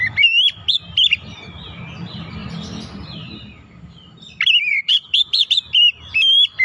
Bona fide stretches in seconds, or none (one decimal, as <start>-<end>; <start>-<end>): none